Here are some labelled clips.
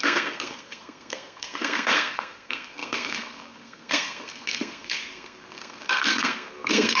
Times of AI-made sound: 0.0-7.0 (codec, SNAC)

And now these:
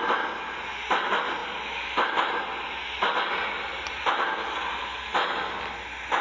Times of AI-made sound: none

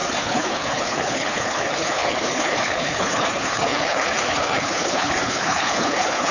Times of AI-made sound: 0.0-6.3 (codec, HILCodec)

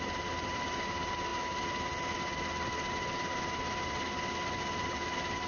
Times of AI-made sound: none